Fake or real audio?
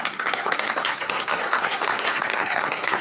fake